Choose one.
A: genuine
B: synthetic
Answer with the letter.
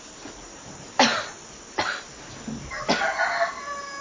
A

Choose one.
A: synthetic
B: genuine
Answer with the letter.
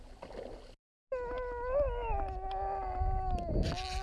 B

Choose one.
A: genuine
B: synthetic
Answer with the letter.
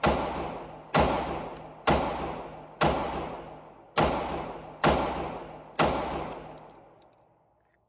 A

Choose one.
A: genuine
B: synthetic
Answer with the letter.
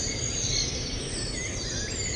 A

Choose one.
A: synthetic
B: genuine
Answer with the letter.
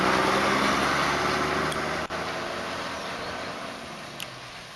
B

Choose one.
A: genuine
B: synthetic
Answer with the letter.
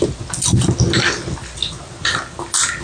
A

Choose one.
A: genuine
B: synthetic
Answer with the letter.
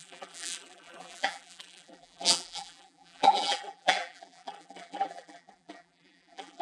B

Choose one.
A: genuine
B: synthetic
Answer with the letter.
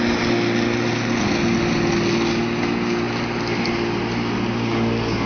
A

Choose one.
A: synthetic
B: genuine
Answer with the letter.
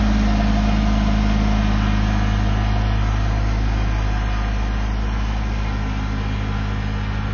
B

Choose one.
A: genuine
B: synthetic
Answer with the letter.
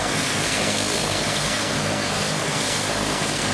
B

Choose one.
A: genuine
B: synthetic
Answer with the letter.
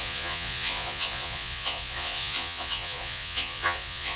B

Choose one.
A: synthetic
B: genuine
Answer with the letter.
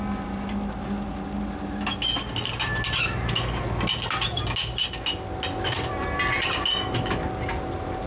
B